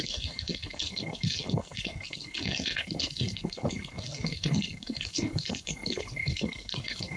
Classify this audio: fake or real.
fake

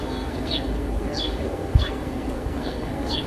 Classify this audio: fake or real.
fake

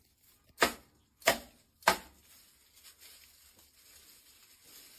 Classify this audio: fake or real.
real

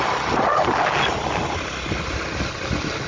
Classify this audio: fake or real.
real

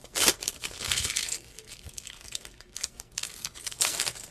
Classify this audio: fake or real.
fake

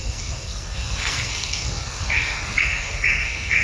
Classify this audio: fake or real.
fake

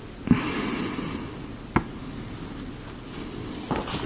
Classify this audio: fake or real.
real